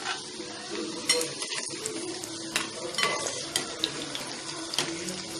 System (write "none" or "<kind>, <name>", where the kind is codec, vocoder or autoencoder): none